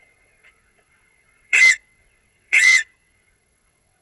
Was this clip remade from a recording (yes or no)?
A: yes